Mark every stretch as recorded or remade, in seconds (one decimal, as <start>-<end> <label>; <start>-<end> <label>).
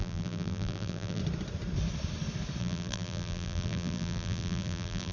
0.0-1.2 remade; 1.2-2.6 recorded; 2.6-5.1 remade